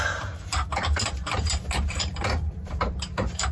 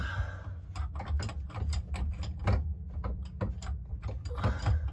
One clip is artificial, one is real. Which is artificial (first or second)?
first